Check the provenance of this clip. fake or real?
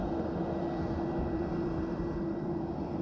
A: real